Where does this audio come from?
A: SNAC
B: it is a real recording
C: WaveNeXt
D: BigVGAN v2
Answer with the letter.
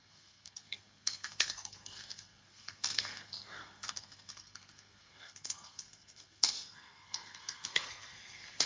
A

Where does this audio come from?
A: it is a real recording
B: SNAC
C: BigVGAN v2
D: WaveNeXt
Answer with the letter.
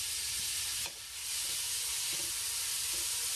A